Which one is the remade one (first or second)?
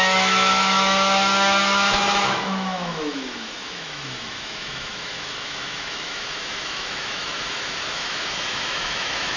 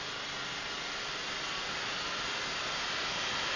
first